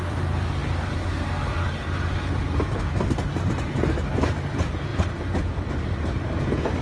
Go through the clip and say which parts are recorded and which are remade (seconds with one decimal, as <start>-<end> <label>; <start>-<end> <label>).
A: 0.0-6.8 recorded